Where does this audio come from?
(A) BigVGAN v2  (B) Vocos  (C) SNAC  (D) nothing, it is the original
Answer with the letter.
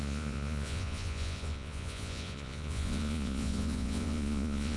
B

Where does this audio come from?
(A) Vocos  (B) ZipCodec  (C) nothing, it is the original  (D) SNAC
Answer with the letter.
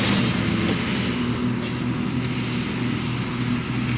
C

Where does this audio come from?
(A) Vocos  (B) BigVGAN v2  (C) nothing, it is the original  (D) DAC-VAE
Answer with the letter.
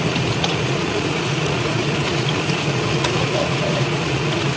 A